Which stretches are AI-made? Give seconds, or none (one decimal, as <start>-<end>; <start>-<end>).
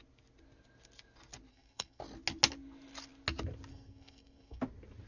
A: 1.5-2.0; 3.7-4.6